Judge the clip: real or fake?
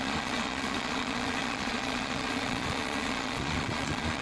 fake